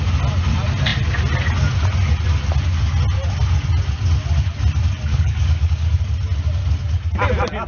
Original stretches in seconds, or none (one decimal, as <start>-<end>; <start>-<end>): 0.0-5.1; 6.0-7.7